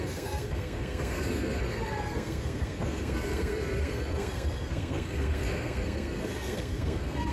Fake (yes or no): yes